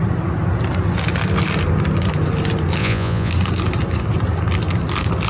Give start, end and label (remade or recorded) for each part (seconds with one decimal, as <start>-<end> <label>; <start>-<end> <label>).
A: 0.0-2.8 recorded; 2.8-3.3 remade; 3.3-5.3 recorded